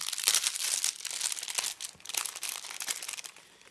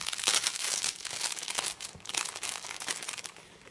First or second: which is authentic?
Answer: first